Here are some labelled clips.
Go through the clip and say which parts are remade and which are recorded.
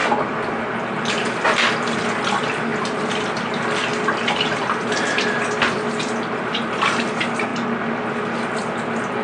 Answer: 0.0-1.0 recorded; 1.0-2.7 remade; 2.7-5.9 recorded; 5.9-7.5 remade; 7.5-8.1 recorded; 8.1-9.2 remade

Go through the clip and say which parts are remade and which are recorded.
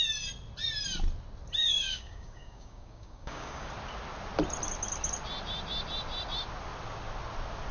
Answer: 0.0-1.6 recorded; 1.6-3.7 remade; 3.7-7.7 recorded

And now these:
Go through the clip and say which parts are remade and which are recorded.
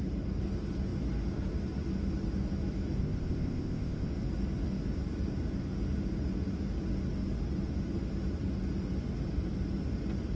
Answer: 0.0-3.0 recorded; 3.0-4.1 remade; 4.1-10.4 recorded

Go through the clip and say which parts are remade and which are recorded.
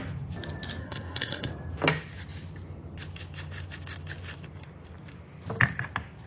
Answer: 0.0-0.8 recorded; 0.8-1.5 remade; 1.5-6.3 recorded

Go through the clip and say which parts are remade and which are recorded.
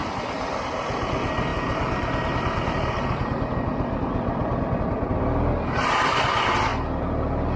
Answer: 0.0-7.6 recorded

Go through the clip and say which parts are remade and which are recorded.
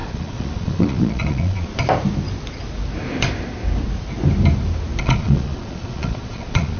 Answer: 0.0-1.7 remade; 1.7-5.0 recorded; 5.0-6.8 remade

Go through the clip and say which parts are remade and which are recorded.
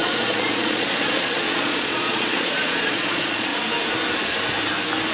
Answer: 0.0-3.5 remade; 3.5-5.1 recorded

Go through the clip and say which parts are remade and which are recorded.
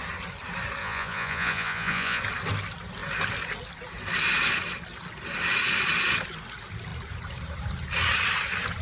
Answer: 0.0-0.8 recorded; 0.8-2.2 remade; 2.2-8.8 recorded